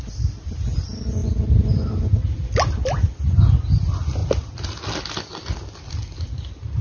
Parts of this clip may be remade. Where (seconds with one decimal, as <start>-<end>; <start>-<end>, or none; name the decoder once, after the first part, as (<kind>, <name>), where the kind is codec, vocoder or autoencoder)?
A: none